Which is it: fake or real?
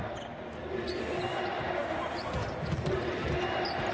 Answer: real